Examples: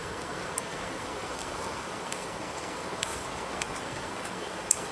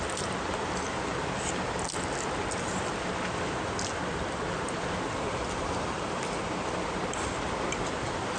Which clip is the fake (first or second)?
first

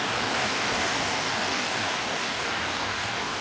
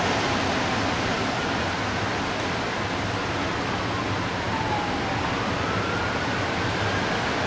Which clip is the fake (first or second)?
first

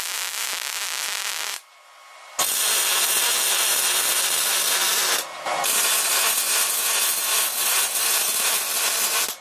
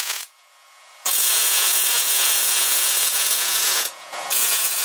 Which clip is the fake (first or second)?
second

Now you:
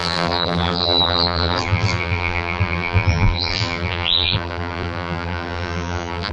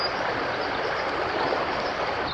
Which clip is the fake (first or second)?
first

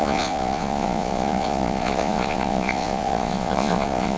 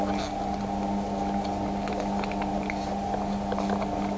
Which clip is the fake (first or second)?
first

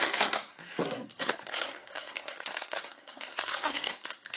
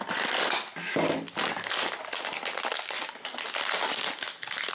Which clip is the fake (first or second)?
first